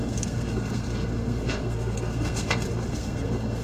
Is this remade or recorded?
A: remade